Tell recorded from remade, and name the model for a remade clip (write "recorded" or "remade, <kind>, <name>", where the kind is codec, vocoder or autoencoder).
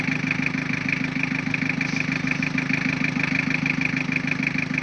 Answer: recorded